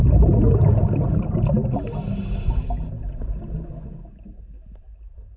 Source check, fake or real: real